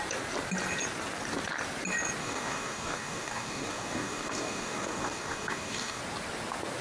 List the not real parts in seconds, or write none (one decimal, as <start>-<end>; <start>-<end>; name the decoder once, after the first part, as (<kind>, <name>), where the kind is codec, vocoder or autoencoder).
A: 2.2-6.0 (codec, DAC)